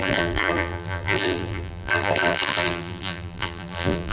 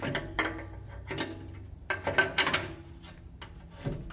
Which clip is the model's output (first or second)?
first